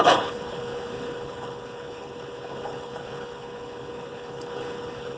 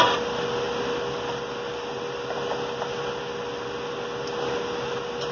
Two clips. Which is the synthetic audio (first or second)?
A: first